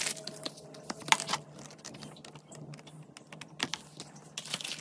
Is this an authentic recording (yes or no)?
yes